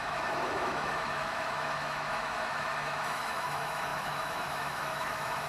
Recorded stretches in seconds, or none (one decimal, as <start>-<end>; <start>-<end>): none